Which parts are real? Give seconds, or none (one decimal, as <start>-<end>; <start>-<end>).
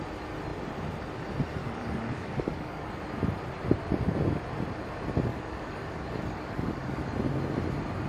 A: 0.0-1.6; 2.9-5.3; 7.1-8.1